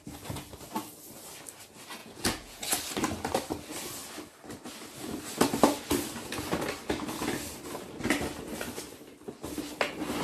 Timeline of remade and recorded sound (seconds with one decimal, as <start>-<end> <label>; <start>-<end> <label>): 0.0-2.0 recorded; 2.0-2.7 remade; 2.7-10.2 recorded